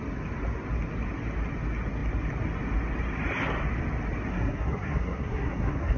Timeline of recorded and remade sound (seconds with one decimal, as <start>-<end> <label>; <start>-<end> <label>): 0.0-4.3 recorded; 4.3-6.0 remade